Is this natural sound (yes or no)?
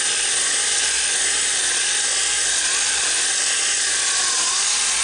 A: yes